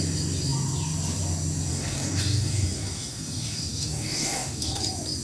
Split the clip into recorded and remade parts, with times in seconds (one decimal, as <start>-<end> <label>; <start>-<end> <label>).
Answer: 0.0-1.7 recorded; 1.7-4.8 remade; 4.8-5.2 recorded